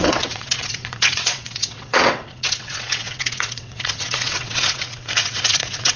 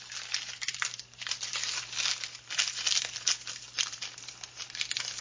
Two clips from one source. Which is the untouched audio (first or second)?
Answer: second